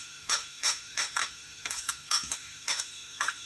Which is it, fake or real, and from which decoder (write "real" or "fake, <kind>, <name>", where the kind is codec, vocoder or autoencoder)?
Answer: fake, autoencoder, DAC-VAE